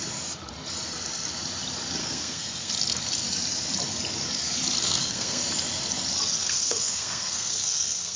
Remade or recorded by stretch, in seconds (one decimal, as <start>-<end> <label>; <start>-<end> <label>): 0.0-2.0 recorded; 2.0-2.7 remade; 2.7-4.8 recorded; 4.8-5.4 remade; 5.4-6.4 recorded; 6.4-8.2 remade